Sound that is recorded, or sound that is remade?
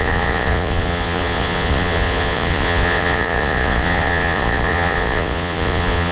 remade